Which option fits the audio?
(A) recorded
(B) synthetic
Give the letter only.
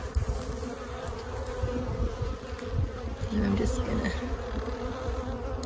A